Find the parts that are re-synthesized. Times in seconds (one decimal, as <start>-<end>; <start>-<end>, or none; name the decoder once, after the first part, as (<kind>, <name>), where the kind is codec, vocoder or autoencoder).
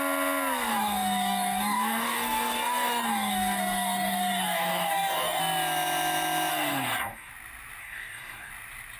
0.7-5.4 (codec, DAC); 6.5-7.3; 7.8-8.5